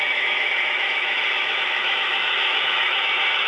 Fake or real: fake